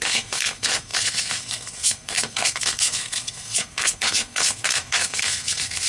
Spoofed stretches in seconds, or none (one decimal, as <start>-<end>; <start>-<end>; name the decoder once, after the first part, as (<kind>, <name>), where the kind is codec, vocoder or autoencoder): 0.0-5.9 (codec, SNAC)